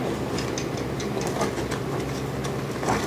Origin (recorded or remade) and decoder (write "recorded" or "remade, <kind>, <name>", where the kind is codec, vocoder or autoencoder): recorded